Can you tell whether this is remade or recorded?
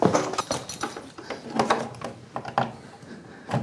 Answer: recorded